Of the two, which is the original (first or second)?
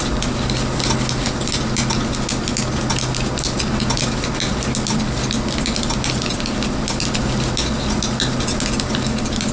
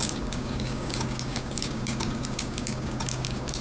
first